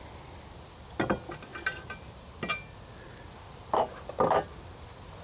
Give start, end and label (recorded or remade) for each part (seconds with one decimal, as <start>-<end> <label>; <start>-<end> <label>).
0.0-5.2 recorded